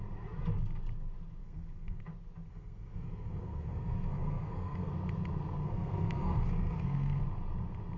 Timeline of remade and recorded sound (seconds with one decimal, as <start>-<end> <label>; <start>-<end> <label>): 0.0-1.4 recorded; 1.4-2.0 remade; 2.0-2.5 recorded; 2.5-4.9 remade; 4.9-5.6 recorded; 5.6-7.2 remade; 7.2-8.0 recorded